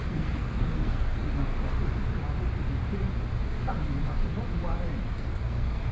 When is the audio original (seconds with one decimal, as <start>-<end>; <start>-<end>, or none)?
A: 1.5-5.0